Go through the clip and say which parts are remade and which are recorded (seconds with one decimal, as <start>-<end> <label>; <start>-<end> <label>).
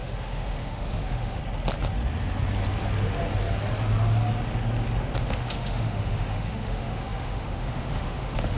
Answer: 0.0-1.4 remade; 1.4-5.2 recorded; 5.2-8.6 remade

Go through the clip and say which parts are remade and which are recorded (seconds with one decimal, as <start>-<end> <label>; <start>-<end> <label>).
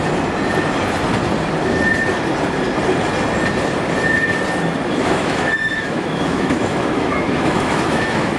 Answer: 0.0-5.0 recorded; 5.0-8.4 remade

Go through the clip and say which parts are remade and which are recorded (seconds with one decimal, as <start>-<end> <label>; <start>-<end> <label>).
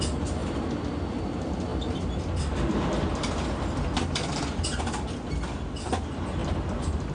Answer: 0.0-7.1 recorded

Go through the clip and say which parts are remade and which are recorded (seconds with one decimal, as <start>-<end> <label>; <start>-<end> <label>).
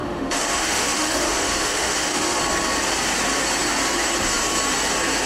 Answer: 0.0-2.4 remade; 2.4-5.3 recorded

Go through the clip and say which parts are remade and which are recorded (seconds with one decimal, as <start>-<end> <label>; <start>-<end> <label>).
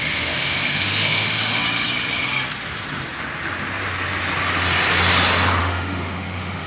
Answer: 0.0-1.6 remade; 1.6-5.6 recorded; 5.6-6.7 remade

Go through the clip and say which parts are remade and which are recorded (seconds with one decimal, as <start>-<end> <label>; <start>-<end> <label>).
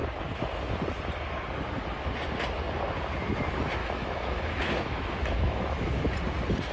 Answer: 0.0-3.8 recorded; 3.8-6.0 remade; 6.0-6.7 recorded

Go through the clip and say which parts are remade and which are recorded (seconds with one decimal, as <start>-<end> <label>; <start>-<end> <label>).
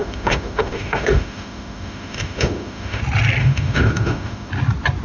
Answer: 0.0-3.0 remade; 3.0-3.4 recorded; 3.4-4.5 remade; 4.5-5.0 recorded